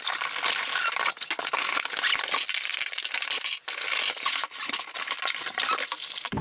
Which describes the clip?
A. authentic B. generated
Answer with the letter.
A